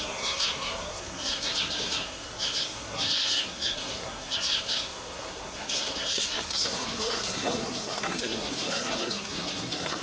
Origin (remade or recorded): remade